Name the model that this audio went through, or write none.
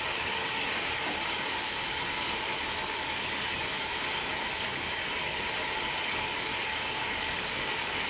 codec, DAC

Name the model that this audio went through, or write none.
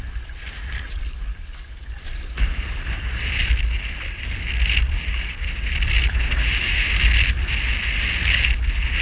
none